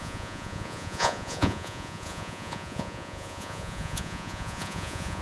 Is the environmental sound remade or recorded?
remade